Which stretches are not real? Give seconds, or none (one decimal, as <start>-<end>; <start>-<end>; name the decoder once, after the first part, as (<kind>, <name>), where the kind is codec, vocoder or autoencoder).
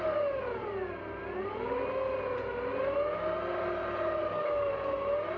4.2-4.7 (codec, DAC)